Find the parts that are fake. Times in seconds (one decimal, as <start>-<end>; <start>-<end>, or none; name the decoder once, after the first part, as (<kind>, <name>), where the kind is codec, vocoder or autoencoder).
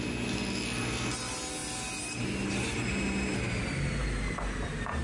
none